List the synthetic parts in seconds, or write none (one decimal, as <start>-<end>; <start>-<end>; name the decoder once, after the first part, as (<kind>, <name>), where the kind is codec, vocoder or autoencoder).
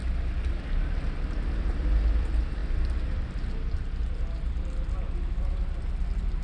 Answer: none